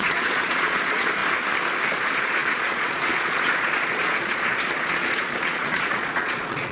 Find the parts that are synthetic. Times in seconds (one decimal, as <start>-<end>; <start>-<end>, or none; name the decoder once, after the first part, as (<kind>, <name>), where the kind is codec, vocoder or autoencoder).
0.0-1.2 (vocoder, Vocos); 1.9-6.7